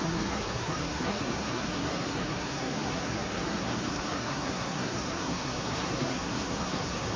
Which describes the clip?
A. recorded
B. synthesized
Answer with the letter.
B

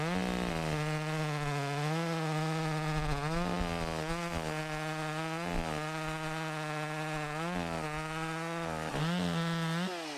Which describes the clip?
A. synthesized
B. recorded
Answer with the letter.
B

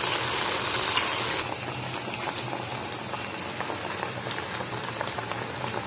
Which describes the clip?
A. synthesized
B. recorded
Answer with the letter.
B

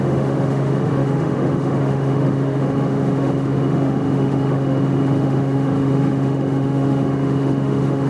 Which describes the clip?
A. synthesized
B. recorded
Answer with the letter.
A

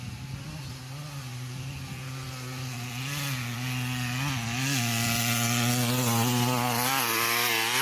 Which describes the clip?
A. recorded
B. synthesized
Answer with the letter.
A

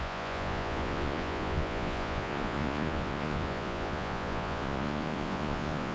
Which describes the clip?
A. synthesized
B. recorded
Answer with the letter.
A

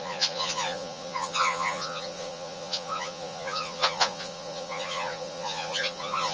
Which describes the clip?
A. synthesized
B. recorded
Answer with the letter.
A